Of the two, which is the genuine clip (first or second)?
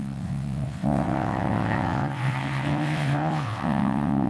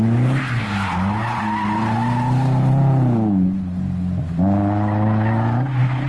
second